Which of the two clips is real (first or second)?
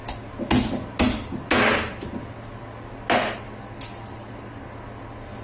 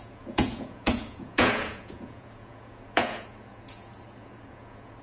first